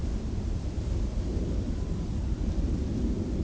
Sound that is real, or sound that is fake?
fake